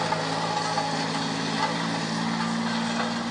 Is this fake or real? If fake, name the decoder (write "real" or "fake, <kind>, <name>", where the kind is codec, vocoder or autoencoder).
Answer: real